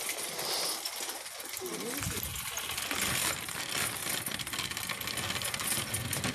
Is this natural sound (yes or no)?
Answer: yes